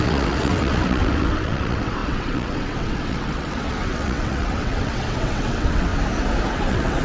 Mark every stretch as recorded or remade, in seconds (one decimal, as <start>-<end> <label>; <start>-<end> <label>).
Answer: 0.0-5.9 remade; 5.9-6.5 recorded; 6.5-7.0 remade